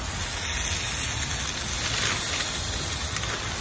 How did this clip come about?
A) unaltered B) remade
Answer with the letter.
A